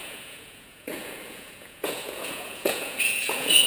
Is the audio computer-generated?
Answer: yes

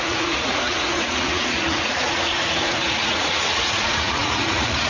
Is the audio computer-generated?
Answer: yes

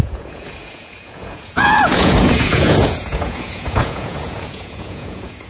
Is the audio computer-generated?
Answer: yes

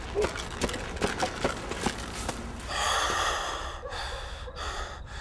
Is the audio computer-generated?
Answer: no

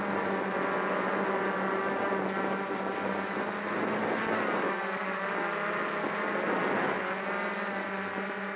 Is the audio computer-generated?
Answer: no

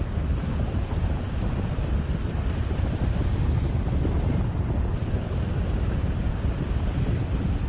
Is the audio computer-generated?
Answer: no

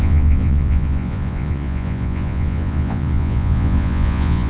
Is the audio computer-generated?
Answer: yes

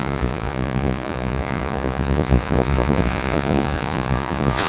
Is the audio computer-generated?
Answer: yes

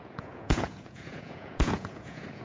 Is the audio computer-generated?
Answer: yes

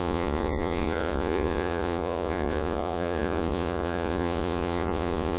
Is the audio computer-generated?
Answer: yes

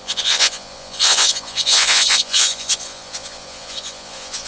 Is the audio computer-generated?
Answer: yes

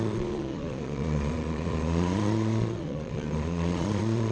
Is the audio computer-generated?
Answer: yes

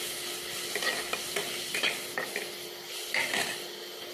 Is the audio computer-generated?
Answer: no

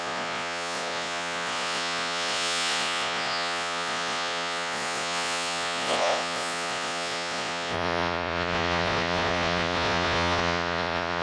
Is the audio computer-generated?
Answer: yes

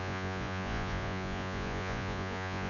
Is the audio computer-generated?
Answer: yes